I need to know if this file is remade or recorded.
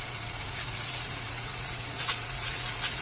remade